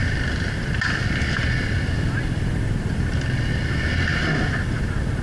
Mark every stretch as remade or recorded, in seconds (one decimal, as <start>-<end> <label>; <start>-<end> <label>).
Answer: 0.0-5.2 recorded